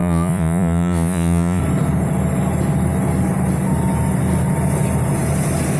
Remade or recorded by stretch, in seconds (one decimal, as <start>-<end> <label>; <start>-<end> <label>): 0.0-1.6 remade; 1.6-5.8 recorded